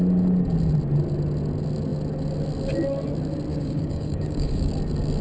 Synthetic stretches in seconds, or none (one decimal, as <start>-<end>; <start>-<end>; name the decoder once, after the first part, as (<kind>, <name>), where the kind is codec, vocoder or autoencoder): 3.5-4.7 (codec, DAC)